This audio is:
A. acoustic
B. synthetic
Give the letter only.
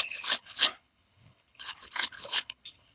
B